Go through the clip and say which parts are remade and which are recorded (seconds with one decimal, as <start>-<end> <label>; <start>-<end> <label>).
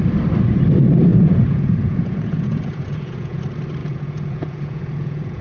0.0-1.1 recorded; 1.1-3.4 remade; 3.4-3.8 recorded; 3.8-5.4 remade